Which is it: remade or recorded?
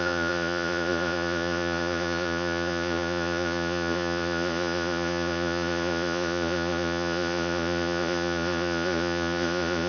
remade